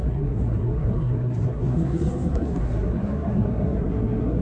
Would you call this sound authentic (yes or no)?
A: no